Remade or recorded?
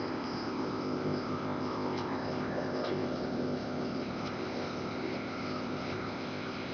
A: remade